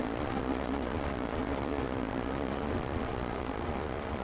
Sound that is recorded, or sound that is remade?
remade